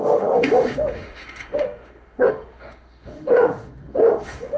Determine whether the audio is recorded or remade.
remade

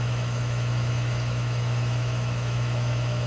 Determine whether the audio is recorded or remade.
remade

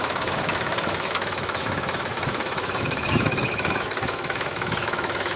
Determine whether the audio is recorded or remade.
remade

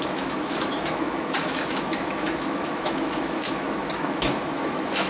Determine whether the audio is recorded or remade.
remade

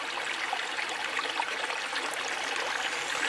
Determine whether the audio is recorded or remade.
recorded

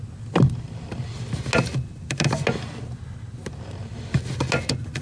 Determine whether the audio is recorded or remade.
recorded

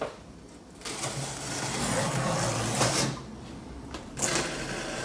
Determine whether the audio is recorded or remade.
recorded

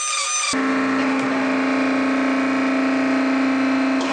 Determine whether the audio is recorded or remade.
recorded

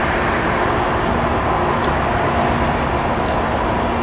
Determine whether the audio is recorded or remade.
recorded